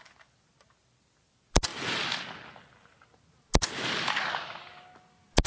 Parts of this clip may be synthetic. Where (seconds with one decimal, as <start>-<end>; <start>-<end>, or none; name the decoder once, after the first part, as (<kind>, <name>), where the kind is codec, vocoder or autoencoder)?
none